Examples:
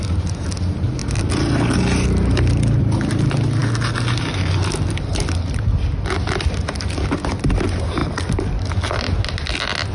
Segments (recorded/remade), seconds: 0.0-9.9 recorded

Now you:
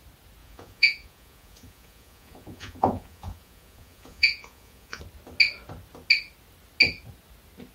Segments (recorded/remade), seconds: 0.0-0.4 recorded; 0.4-5.0 remade; 5.0-7.7 recorded

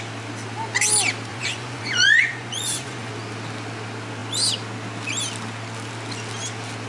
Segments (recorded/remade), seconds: 0.0-1.3 recorded; 1.3-3.1 remade; 3.1-6.9 recorded

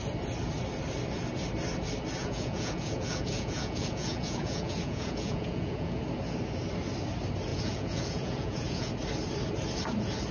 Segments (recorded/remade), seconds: 0.0-2.2 recorded; 2.2-6.0 remade; 6.0-7.5 recorded; 7.5-8.9 remade; 8.9-10.3 recorded

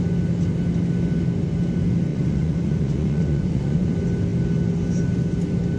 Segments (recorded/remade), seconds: 0.0-2.1 recorded; 2.1-3.9 remade; 3.9-5.8 recorded

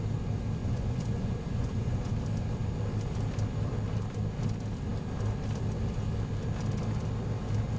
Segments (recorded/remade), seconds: 0.0-0.6 recorded; 0.6-2.1 remade; 2.1-7.8 recorded